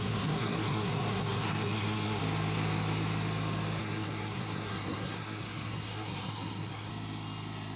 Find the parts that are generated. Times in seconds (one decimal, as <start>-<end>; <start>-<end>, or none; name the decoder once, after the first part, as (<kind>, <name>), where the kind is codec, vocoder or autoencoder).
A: 0.0-2.2 (codec, SNAC); 3.8-6.9